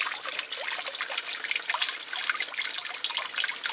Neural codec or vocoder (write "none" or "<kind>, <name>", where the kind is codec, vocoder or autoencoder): none